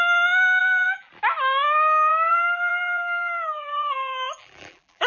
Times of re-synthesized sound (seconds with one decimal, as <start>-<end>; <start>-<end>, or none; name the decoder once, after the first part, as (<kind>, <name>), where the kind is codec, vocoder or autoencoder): 0.6-1.1 (vocoder, BigVGAN v2); 2.1-5.1